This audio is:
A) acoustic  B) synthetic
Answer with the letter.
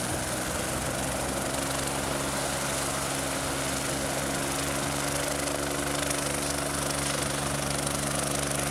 A